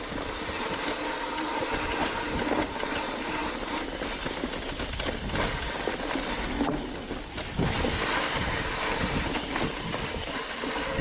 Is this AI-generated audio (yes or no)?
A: no